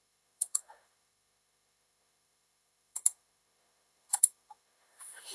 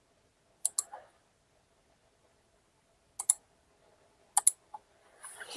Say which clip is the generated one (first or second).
first